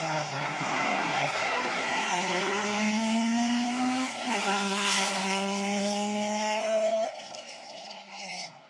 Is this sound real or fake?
fake